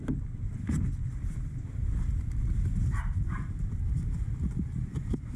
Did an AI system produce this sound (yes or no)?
no